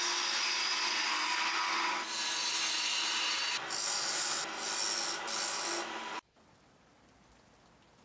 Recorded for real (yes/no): yes